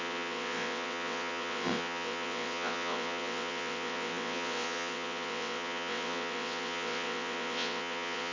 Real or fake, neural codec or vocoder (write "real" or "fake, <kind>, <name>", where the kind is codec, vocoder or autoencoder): fake, vocoder, WaveNeXt